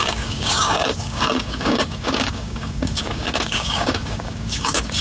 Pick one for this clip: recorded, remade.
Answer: remade